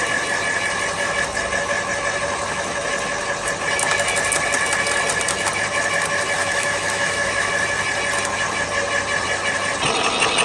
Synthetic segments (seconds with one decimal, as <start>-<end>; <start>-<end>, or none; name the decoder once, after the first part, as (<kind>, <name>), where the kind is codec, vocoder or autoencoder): 6.4-7.5 (autoencoder, DAC-VAE)